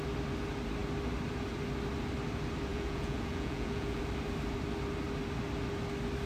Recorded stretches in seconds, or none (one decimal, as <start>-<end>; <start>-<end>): 0.0-2.7; 4.0-6.3